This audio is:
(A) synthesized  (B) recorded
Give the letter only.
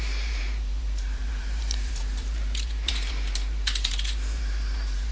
A